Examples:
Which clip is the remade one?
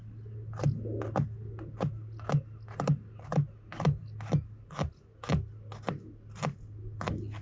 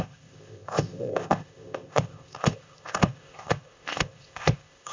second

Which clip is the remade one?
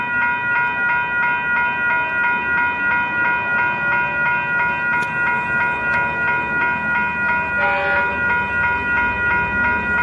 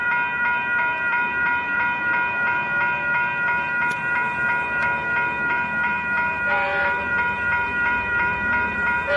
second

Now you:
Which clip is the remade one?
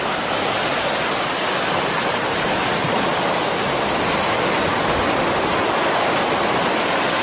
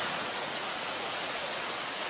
second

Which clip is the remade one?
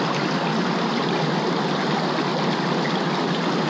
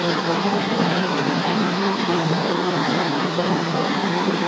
second